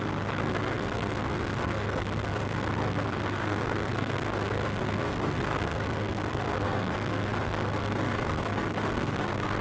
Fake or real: fake